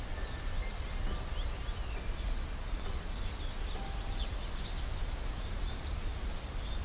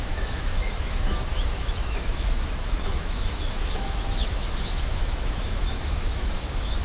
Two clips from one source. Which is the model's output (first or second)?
second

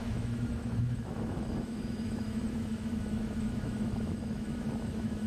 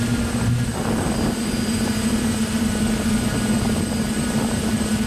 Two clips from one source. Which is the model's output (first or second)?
first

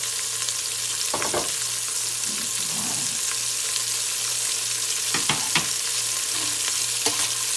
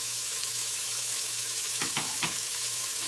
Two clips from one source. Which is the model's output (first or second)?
second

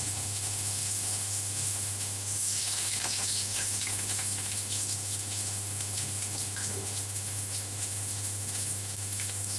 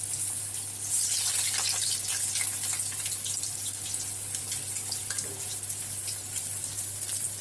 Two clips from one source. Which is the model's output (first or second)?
first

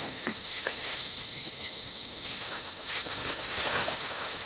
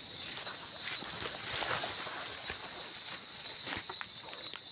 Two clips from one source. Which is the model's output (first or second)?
first